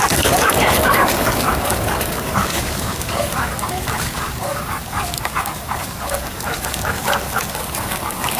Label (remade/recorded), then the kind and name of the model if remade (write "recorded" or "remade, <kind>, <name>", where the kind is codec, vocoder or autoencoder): remade, codec, DAC